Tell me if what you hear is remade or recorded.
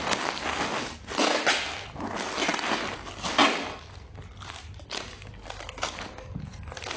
recorded